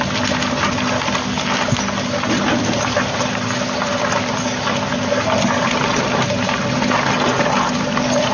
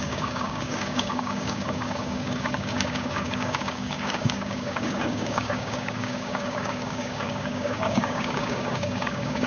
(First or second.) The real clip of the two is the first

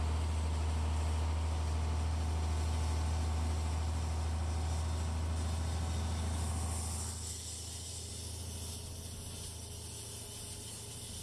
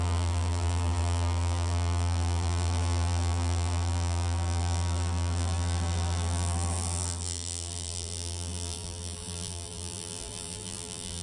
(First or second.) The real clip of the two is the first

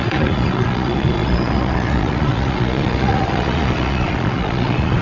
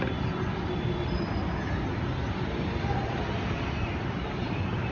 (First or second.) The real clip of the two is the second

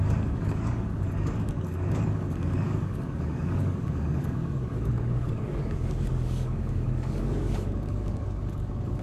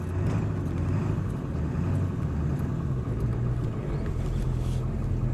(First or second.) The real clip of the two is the second